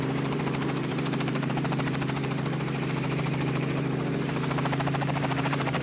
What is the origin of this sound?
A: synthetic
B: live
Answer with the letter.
A